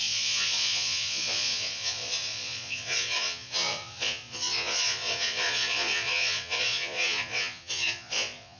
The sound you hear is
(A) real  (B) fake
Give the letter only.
B